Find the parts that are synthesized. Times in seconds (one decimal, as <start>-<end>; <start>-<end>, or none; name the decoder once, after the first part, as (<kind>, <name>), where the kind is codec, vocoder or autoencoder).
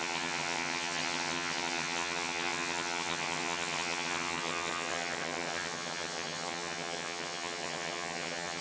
0.0-8.6 (vocoder, HiFi-GAN)